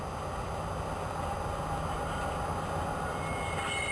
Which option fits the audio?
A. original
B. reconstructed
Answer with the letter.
A